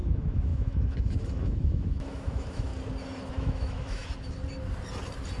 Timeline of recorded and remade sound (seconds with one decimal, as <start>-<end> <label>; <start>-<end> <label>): 0.0-2.7 remade; 2.7-3.3 recorded; 3.3-4.0 remade; 4.0-5.4 recorded

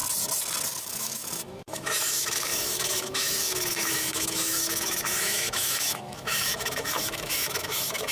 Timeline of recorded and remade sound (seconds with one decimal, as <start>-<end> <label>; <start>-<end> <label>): 0.0-0.8 recorded; 0.8-8.1 remade

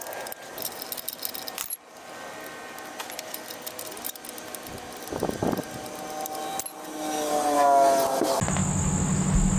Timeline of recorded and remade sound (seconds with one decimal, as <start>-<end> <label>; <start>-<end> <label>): 0.0-9.6 recorded

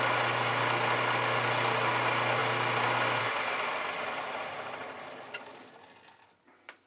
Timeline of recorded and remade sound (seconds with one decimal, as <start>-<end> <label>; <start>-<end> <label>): 0.0-6.9 recorded

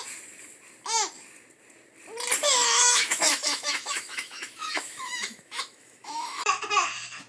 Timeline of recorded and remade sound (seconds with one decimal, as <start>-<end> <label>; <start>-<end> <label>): 0.0-2.4 recorded; 2.4-6.6 remade; 6.6-7.3 recorded

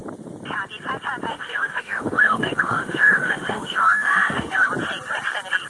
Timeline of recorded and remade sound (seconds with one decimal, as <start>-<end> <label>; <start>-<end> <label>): 0.0-1.3 recorded; 1.3-4.7 remade; 4.7-5.7 recorded

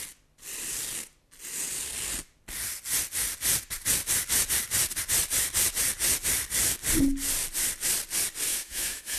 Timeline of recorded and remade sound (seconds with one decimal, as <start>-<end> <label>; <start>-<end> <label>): 0.0-8.5 recorded; 8.5-9.2 remade

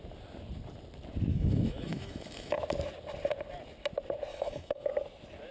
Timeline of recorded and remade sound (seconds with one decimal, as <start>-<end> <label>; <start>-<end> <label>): 0.0-1.3 recorded; 1.3-2.6 remade; 2.6-4.3 recorded; 4.3-4.9 remade; 4.9-5.5 recorded